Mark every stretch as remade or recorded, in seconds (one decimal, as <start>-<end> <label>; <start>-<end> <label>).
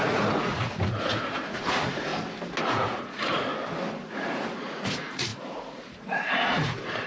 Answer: 0.0-2.1 remade; 2.1-2.6 recorded; 2.6-3.5 remade; 3.5-4.1 recorded; 4.1-7.1 remade